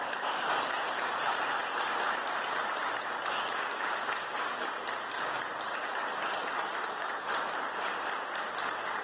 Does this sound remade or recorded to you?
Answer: remade